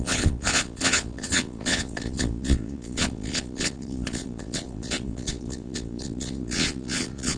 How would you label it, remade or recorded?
remade